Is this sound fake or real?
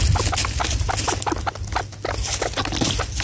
real